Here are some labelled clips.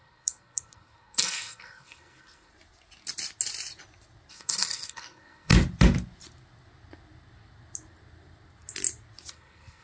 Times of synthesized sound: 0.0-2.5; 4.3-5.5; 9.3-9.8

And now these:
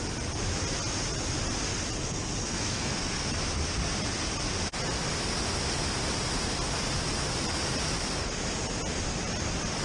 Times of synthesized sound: 2.0-3.3

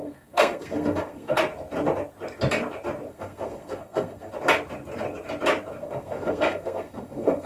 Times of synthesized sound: 0.0-1.4; 3.1-4.3; 5.8-7.5